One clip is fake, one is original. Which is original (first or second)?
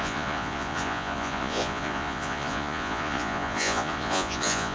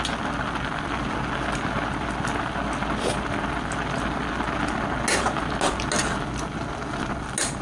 second